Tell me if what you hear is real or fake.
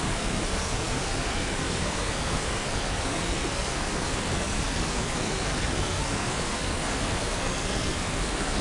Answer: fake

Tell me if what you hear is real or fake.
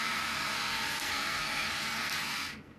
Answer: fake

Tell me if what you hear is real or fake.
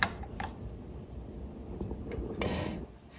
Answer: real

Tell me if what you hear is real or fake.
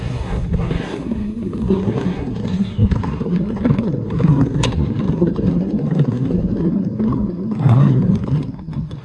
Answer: fake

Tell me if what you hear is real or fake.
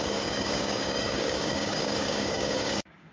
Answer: fake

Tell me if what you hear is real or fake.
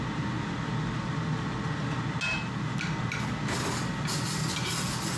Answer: real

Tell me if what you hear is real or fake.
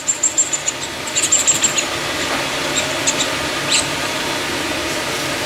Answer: real